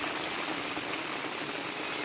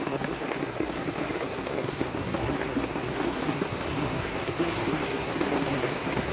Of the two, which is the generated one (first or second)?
second